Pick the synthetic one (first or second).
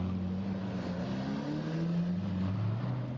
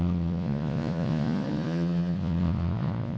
second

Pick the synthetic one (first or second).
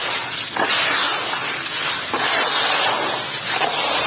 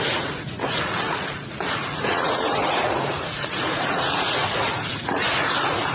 second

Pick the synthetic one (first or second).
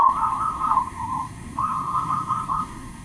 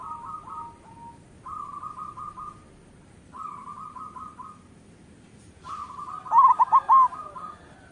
first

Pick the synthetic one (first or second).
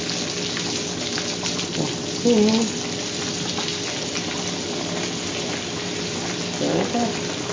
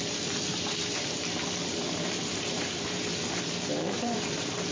second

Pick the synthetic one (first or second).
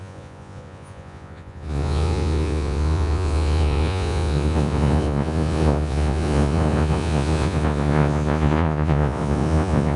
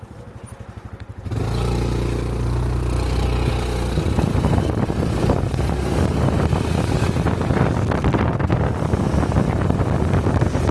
first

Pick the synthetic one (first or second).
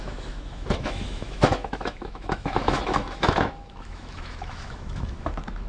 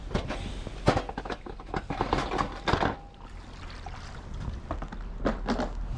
first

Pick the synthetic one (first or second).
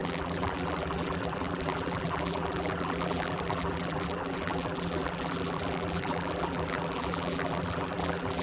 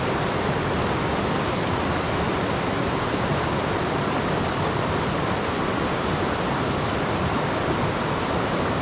first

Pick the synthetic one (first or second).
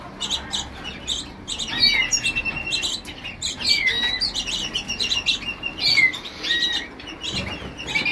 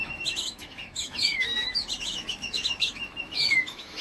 second